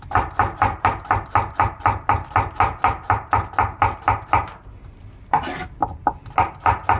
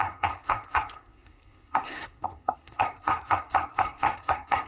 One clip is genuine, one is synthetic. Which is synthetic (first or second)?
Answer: second